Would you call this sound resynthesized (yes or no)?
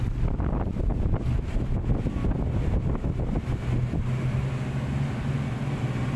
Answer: no